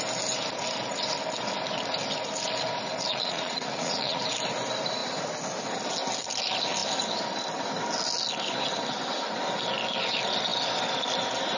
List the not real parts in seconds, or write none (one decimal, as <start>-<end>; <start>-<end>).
3.1-4.2